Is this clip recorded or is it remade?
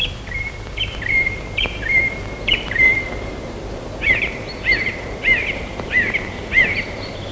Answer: remade